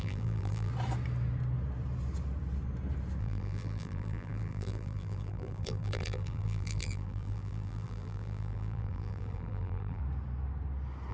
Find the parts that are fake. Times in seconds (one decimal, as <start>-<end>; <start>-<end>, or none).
0.0-0.7; 3.2-10.0